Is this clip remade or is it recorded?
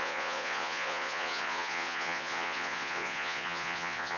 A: remade